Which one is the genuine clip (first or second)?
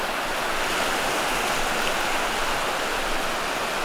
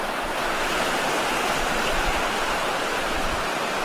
first